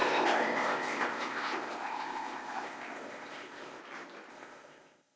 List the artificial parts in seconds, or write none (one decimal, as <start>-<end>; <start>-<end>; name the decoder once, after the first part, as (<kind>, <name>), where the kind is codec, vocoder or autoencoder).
0.0-3.8 (codec, ZipCodec); 4.3-5.2